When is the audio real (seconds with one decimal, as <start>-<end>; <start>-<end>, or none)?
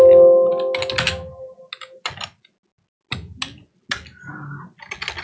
0.0-5.2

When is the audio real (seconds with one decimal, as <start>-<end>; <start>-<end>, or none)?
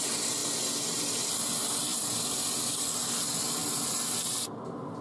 0.0-1.9; 2.9-5.0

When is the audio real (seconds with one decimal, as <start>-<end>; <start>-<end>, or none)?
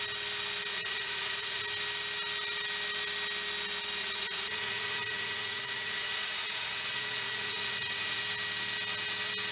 0.0-0.7; 1.6-4.0; 8.2-9.5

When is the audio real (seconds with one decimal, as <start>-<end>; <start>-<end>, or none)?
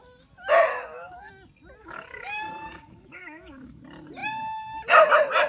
0.0-0.7; 1.3-1.8; 3.8-5.5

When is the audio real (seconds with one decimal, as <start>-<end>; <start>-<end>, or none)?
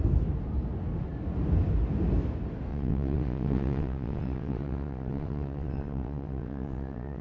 0.0-2.7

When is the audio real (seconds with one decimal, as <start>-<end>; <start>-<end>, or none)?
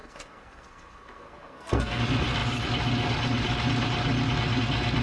2.0-5.0